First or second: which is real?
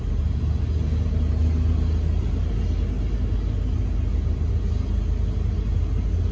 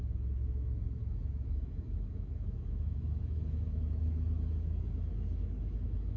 first